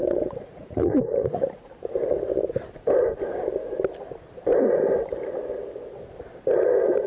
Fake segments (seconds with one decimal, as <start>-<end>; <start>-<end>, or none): 0.0-1.7

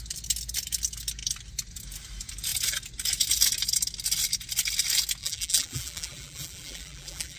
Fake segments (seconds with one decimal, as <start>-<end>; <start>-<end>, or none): 5.2-7.4

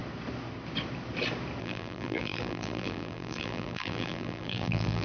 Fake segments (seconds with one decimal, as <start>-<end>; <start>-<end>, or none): 1.6-5.0

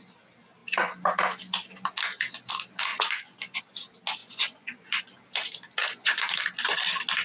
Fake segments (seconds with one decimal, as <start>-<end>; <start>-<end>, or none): 2.9-3.6; 4.2-5.0; 5.8-6.3

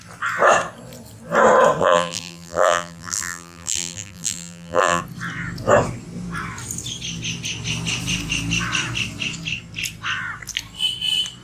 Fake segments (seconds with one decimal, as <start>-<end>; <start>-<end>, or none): 1.8-5.0

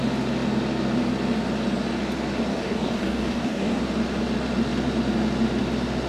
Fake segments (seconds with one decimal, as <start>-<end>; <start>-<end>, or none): 2.5-3.8